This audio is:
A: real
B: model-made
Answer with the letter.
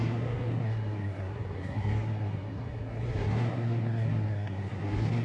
B